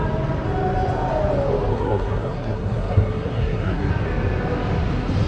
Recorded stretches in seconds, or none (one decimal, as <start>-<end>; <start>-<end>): 0.0-1.7; 3.9-5.3